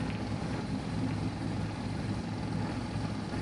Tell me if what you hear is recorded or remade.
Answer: recorded